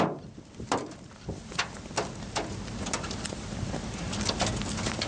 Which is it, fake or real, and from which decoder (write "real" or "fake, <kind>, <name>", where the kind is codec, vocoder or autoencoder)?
real